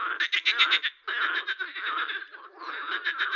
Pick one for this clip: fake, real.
real